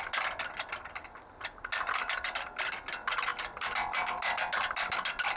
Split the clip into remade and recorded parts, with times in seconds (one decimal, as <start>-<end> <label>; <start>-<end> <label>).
0.0-5.4 recorded